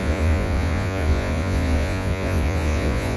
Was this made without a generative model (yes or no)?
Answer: no